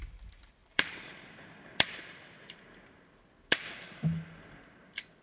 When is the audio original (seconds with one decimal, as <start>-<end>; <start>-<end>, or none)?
0.0-0.6; 3.1-5.2